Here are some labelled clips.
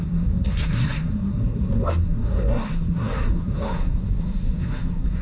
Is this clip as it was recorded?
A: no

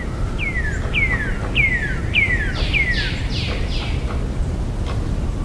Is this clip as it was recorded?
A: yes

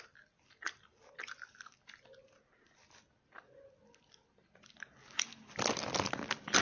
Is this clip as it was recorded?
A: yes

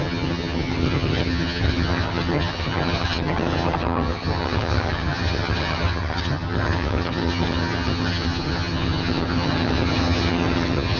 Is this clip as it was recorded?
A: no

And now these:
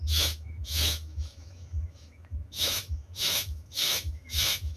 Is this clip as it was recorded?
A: no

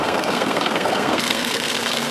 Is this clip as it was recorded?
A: no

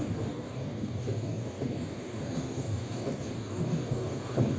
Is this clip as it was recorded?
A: no